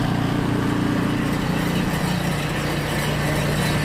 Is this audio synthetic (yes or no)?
yes